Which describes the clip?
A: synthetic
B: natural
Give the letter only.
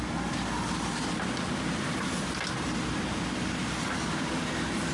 B